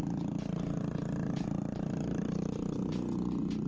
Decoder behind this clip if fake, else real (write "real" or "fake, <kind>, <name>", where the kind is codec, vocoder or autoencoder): real